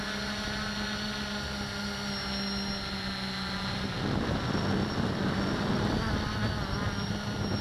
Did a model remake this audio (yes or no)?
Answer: no